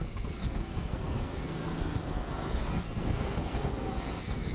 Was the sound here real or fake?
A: fake